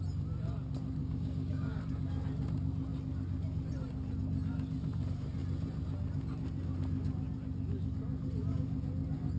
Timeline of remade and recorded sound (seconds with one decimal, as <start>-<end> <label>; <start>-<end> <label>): 0.0-1.0 recorded; 1.0-1.8 remade; 1.8-9.4 recorded